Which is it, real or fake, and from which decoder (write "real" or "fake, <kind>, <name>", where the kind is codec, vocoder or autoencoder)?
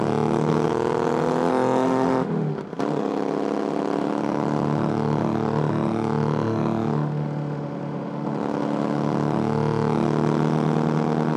fake, autoencoder, DAC-VAE